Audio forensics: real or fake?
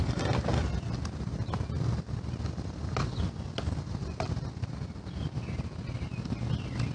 real